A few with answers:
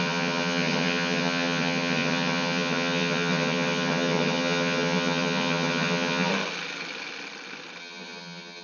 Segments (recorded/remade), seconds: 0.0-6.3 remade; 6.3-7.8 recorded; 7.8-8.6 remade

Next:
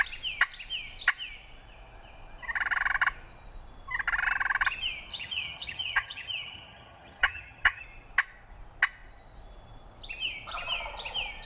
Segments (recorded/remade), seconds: 0.0-5.1 recorded; 5.1-7.8 remade; 7.8-11.5 recorded